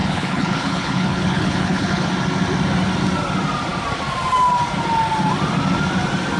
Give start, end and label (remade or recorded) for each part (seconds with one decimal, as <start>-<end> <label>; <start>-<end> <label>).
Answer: 0.0-2.1 remade; 2.1-6.4 recorded